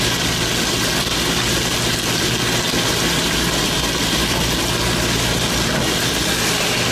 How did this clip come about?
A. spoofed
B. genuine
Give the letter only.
B